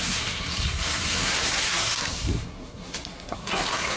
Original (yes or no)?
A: no